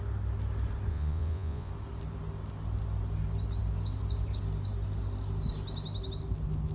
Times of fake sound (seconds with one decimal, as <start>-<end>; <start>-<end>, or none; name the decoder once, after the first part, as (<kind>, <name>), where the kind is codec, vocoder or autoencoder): 0.9-1.7 (vocoder, Vocos)